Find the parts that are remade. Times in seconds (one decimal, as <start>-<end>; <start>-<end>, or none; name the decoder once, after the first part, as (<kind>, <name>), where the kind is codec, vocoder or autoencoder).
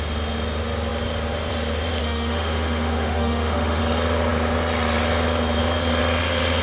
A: 2.0-3.8 (autoencoder, DAC-VAE)